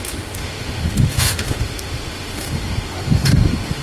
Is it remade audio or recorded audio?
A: remade